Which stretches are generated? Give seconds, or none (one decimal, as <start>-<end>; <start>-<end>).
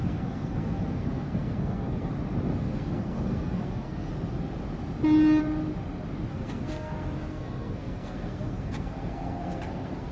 0.0-2.1; 2.6-4.1; 6.3-10.1